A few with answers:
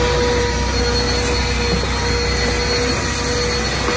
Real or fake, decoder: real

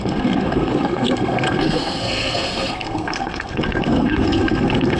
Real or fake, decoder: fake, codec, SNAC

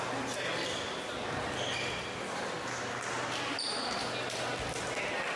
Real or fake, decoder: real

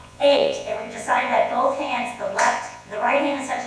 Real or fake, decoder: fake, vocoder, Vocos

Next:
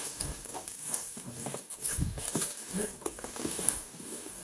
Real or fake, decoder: fake, codec, DAC